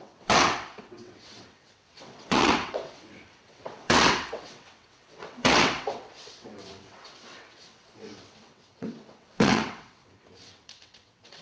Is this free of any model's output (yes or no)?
no